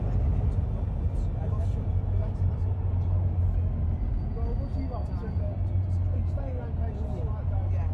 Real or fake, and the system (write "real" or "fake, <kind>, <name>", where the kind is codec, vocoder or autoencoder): real